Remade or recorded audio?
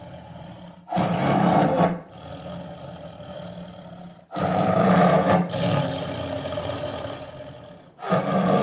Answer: recorded